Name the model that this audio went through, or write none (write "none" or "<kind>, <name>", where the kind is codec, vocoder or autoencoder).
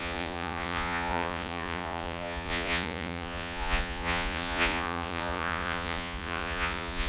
vocoder, Vocos